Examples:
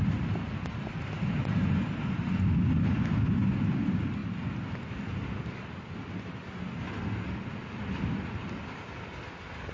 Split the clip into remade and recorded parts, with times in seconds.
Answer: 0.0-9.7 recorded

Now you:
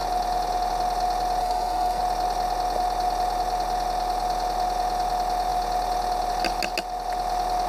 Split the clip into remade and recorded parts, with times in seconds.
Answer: 0.0-1.4 recorded; 1.4-2.0 remade; 2.0-7.7 recorded

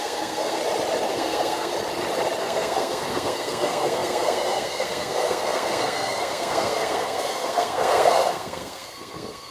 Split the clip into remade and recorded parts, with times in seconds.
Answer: 0.0-0.6 remade; 0.6-1.1 recorded; 1.1-1.7 remade; 1.7-2.4 recorded; 2.4-9.5 remade

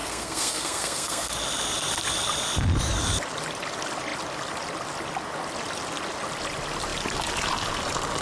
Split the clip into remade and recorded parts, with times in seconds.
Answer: 0.0-1.3 remade; 1.3-8.2 recorded